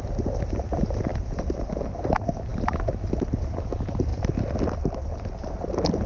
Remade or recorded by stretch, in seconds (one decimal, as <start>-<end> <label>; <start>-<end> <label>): 0.0-6.1 recorded